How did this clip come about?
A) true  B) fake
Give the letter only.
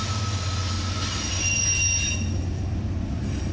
A